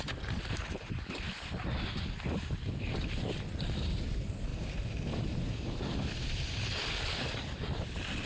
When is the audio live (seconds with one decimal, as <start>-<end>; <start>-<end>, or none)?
0.0-8.3